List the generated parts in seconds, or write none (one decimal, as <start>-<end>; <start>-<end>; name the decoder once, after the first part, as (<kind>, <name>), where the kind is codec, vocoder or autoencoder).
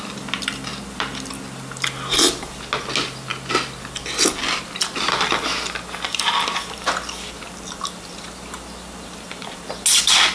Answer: none